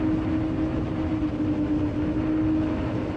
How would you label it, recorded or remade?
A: recorded